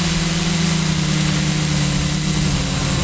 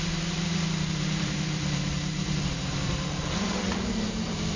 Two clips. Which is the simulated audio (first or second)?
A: second